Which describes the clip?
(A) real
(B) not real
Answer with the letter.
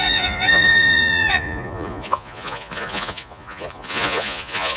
B